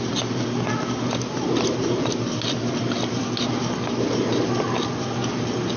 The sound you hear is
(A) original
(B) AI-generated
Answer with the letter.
A